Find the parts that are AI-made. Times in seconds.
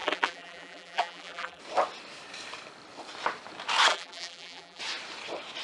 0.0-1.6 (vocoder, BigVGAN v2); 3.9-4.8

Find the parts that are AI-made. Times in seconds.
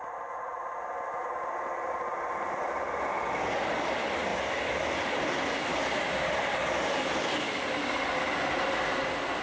none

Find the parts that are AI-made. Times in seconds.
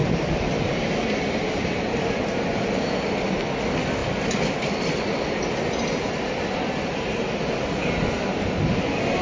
0.0-3.1 (vocoder, BigVGAN v2)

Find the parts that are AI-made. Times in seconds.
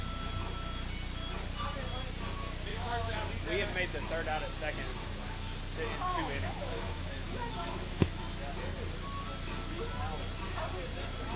2.7-3.3 (autoencoder, DAC-VAE); 4.9-5.6; 6.1-8.2